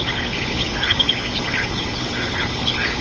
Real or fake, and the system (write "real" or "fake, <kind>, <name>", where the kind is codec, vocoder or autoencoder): fake, codec, HILCodec